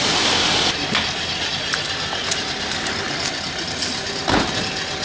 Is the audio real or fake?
real